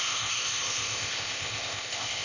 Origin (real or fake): fake